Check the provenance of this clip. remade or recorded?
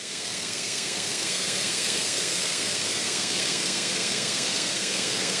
remade